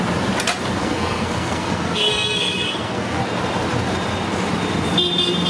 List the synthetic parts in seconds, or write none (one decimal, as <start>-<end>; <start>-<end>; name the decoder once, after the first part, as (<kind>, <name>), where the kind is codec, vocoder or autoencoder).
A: 0.8-3.2 (codec, SNAC)